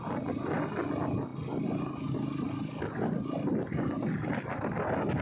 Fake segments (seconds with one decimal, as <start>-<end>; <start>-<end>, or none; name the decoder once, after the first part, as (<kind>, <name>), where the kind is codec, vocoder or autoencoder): none